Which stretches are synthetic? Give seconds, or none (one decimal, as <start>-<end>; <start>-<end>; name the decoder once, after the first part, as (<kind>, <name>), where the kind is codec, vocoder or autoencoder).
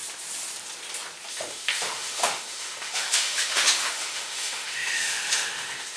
1.3-6.0 (autoencoder, DAC-VAE)